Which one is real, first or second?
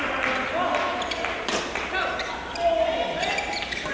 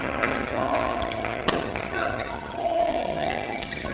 first